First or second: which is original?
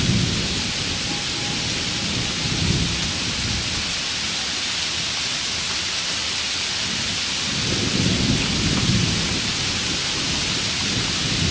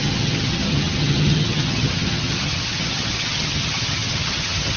first